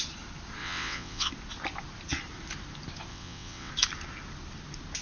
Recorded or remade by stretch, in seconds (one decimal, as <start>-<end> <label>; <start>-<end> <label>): 0.0-0.6 recorded; 0.6-1.3 remade; 1.3-3.1 recorded; 3.1-3.7 remade; 3.7-5.0 recorded